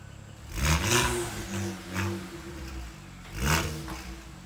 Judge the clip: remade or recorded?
recorded